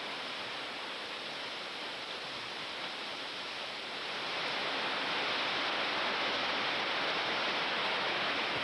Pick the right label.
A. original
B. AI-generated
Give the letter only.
A